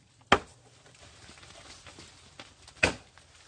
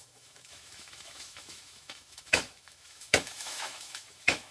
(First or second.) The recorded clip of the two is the first